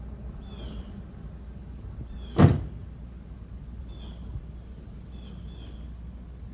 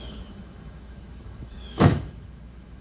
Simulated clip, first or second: second